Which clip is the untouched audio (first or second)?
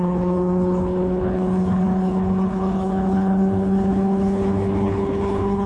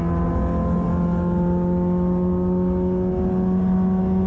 second